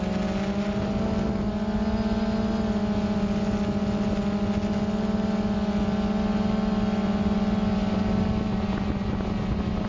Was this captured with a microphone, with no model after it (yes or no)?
yes